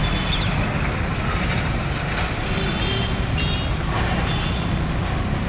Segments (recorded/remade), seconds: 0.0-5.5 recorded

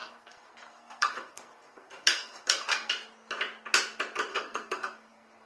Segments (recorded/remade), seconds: 0.0-2.9 remade; 2.9-4.3 recorded; 4.3-5.5 remade

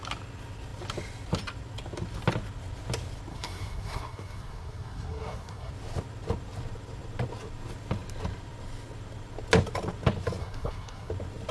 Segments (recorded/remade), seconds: 0.0-3.3 recorded; 3.3-5.7 remade; 5.7-10.4 recorded; 10.4-11.1 remade; 11.1-11.5 recorded

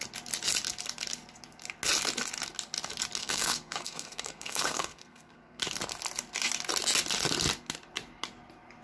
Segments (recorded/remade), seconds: 0.0-3.2 recorded; 3.2-5.6 remade; 5.6-8.8 recorded

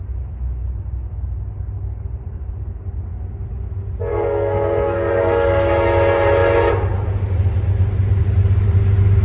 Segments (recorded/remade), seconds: 0.0-4.1 recorded; 4.1-5.7 remade; 5.7-9.2 recorded